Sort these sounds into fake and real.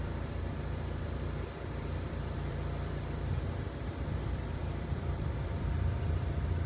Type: fake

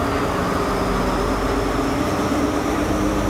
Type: real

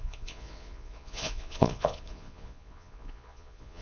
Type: fake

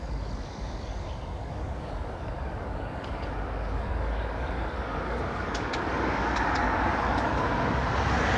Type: fake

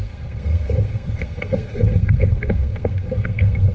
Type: fake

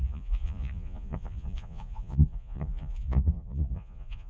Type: fake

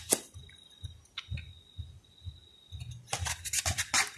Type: real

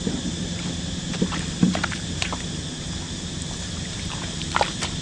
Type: fake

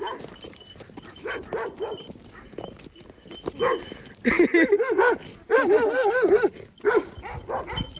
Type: real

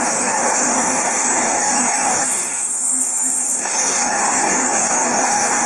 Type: fake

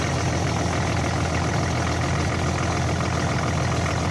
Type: real